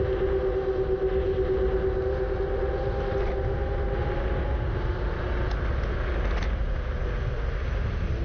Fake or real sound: real